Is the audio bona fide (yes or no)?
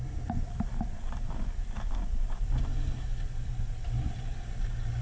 yes